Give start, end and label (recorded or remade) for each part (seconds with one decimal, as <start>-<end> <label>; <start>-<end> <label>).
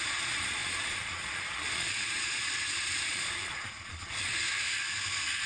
0.0-4.3 remade; 4.3-5.5 recorded